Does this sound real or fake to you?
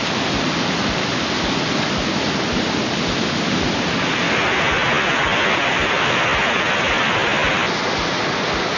real